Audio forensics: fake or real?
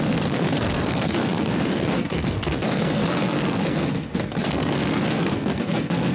fake